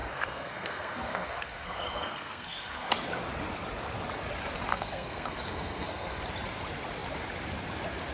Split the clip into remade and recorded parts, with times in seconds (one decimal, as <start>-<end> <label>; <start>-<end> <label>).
0.0-2.9 remade; 2.9-4.7 recorded; 4.7-6.2 remade; 6.2-8.1 recorded